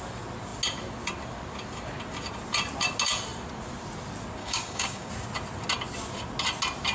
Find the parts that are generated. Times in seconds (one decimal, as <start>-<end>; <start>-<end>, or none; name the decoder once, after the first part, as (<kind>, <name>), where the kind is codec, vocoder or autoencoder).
4.4-5.1 (codec, DAC)